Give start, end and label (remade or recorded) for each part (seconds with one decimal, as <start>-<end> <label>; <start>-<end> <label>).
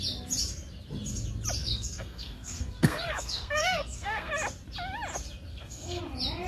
0.0-1.6 recorded; 1.6-4.3 remade; 4.3-5.5 recorded; 5.5-6.0 remade; 6.0-6.5 recorded